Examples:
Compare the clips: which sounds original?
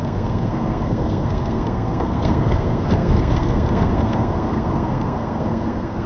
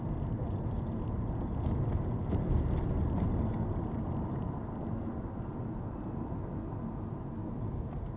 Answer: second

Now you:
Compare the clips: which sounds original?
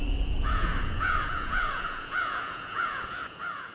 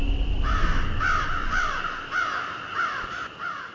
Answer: second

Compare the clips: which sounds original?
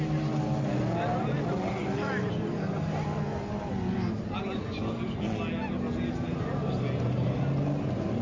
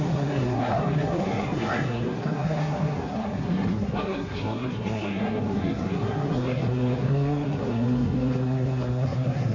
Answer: first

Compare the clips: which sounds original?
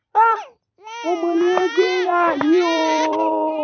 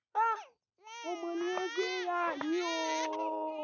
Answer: second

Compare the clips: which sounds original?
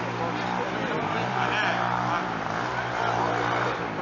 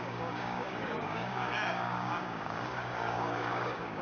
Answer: first